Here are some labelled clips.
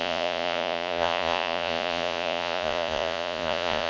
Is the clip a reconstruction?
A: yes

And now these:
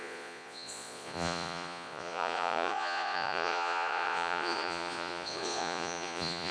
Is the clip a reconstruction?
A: yes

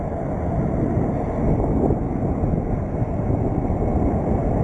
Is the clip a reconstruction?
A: no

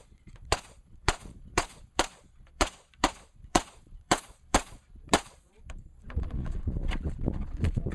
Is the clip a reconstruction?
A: yes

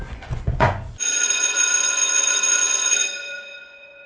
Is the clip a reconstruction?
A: yes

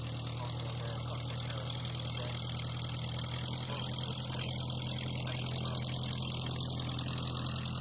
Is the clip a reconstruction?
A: no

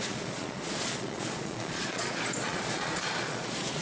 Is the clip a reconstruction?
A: yes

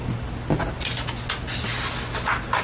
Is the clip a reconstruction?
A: no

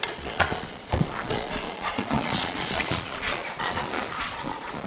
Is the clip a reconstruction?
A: yes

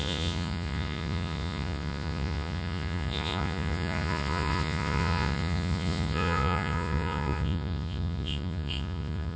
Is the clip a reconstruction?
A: yes